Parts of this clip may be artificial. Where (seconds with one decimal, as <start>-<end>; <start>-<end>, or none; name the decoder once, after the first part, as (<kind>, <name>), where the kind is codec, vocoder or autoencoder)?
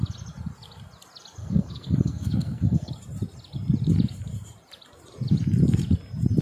1.4-2.9 (codec, SNAC)